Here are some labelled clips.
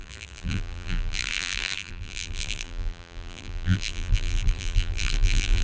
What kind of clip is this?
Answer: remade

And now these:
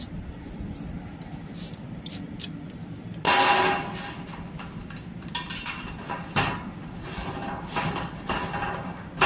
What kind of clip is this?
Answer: recorded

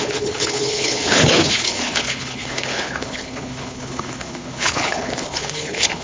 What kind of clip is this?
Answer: remade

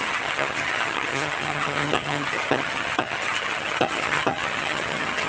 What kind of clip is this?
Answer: remade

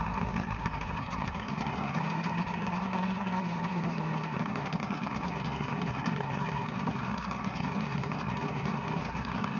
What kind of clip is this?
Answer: remade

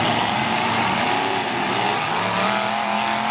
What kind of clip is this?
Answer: recorded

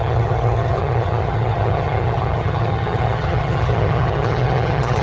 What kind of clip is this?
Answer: remade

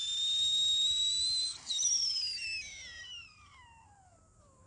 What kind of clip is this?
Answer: recorded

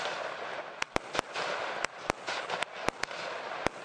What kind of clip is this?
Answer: recorded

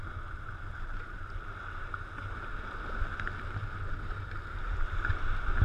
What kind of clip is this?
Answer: recorded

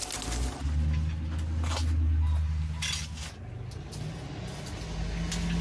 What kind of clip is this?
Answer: recorded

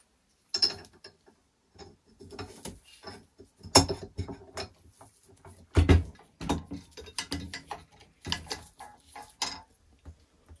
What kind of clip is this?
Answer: recorded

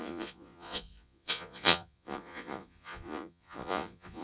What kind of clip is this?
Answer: remade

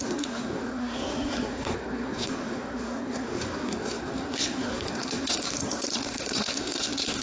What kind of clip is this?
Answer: remade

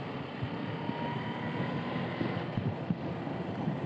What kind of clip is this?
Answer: recorded